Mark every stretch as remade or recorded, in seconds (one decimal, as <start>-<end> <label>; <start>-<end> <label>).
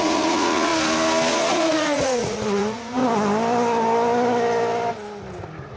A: 0.0-0.7 remade; 0.7-1.3 recorded; 1.3-3.0 remade; 3.0-5.8 recorded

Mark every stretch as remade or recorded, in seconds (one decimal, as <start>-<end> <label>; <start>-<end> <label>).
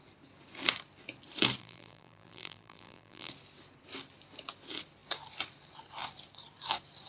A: 0.0-1.6 recorded; 1.6-3.3 remade; 3.3-7.1 recorded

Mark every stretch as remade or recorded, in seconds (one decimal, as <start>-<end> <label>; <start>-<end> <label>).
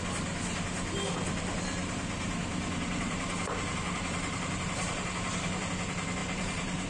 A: 0.0-1.8 recorded; 1.8-5.7 remade; 5.7-6.2 recorded; 6.2-6.9 remade